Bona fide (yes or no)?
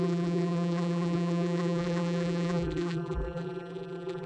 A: no